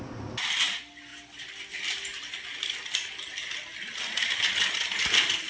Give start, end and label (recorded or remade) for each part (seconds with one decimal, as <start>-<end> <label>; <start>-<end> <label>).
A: 0.0-5.5 recorded